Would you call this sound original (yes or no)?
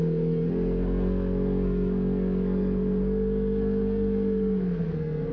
no